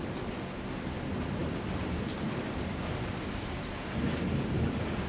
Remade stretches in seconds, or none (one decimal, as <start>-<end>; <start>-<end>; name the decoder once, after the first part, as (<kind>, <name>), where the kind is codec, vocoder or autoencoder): 1.4-3.7 (vocoder, BigVGAN v2)